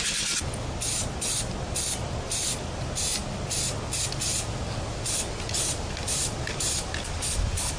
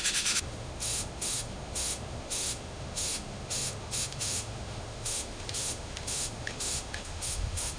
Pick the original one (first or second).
first